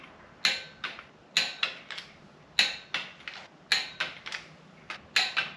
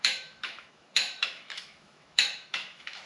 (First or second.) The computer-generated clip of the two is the second